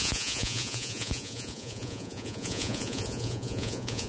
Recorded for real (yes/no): no